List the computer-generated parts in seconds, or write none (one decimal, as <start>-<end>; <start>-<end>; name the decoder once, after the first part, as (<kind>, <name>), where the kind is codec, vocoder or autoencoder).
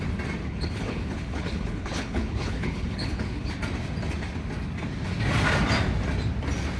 0.4-3.5 (codec, HILCodec)